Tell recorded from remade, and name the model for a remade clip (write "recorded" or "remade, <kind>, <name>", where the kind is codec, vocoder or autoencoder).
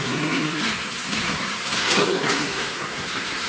remade, codec, SNAC